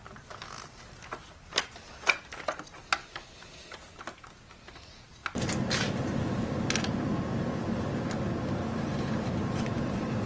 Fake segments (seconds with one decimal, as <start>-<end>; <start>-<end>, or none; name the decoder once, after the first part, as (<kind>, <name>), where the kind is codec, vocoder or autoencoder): none